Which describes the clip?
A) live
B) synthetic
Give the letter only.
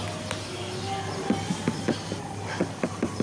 A